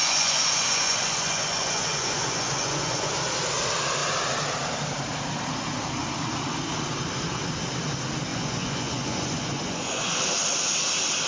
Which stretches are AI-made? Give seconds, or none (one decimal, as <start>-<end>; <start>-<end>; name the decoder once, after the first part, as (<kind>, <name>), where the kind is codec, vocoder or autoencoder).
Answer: 0.0-3.1 (vocoder, Vocos); 8.3-10.2